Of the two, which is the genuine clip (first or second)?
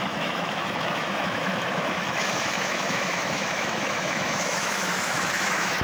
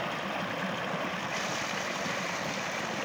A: second